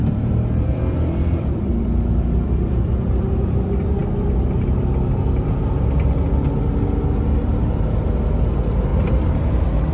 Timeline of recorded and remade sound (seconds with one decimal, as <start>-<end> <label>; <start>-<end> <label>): 0.0-4.0 remade; 4.0-7.4 recorded; 7.4-8.9 remade; 8.9-9.9 recorded